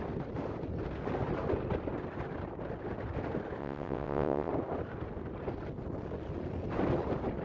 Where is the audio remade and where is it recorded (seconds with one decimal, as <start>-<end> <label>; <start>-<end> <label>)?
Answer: 0.0-3.6 recorded; 3.6-4.5 remade; 4.5-7.4 recorded